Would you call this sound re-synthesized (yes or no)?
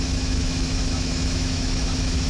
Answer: yes